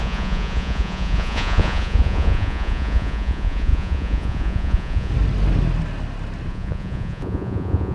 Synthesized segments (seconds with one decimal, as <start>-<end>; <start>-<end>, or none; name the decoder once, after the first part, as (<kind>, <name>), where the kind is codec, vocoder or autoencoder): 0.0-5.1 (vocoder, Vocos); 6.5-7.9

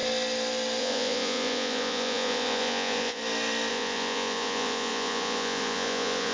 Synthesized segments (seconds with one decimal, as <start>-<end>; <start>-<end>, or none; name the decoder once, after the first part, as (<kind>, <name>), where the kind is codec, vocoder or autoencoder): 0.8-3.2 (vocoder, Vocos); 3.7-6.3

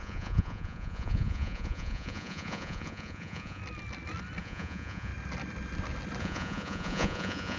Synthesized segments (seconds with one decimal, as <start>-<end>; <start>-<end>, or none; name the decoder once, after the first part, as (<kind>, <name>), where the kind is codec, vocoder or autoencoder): 0.0-3.6 (vocoder, Vocos); 4.4-5.1; 6.2-7.6